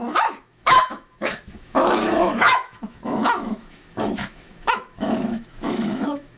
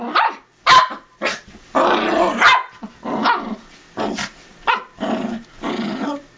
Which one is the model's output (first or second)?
first